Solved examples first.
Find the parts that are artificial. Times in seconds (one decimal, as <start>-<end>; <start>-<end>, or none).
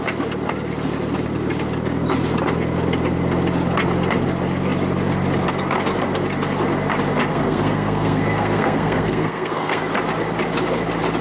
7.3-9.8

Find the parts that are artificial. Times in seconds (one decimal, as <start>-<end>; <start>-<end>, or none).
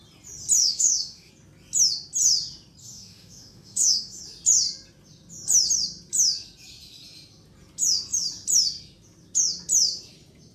0.6-1.3; 2.8-4.2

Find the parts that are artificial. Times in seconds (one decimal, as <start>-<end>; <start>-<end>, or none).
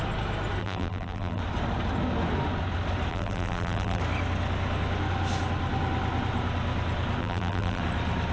0.6-1.4; 3.1-4.0; 7.2-7.8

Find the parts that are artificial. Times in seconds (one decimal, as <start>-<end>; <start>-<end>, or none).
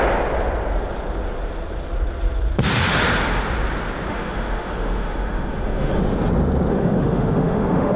4.1-6.0; 6.7-8.0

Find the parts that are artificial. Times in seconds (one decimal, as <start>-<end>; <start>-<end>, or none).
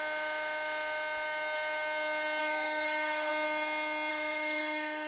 2.4-3.3; 4.1-5.1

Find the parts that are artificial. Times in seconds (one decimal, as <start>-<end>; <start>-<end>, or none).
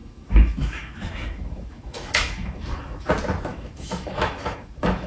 0.0-3.1; 3.5-5.1